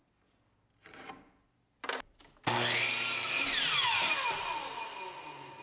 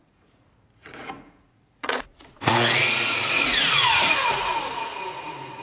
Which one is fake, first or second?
second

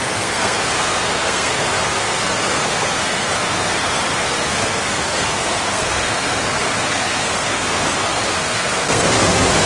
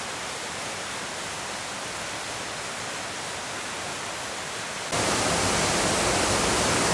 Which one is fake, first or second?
first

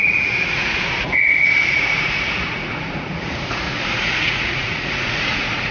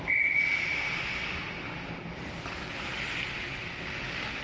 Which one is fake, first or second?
first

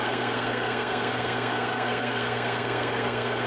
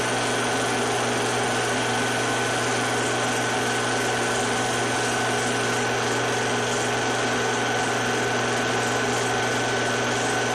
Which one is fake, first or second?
first